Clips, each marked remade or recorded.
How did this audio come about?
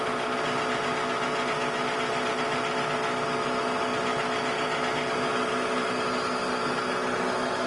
recorded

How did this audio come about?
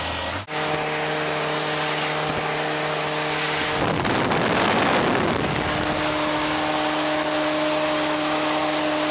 recorded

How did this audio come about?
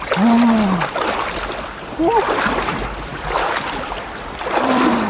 remade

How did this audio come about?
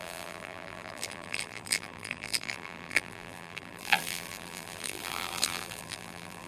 remade